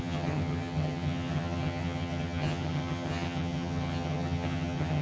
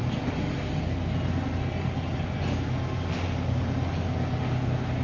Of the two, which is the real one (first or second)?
second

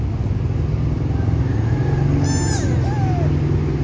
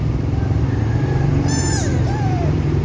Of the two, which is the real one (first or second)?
first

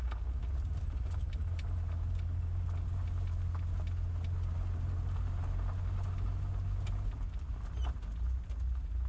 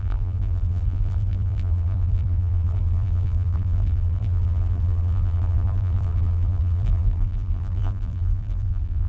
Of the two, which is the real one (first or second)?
first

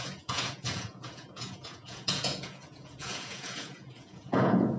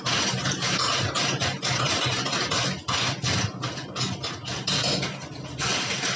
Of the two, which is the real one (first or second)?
second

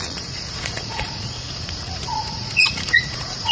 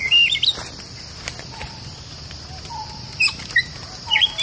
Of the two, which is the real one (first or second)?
second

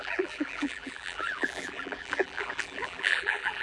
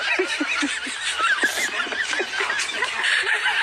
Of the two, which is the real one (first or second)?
second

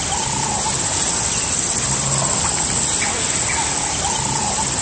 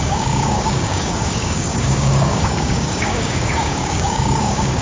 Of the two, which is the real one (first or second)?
first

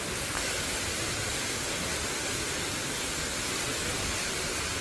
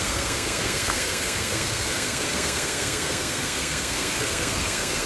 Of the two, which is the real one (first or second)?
first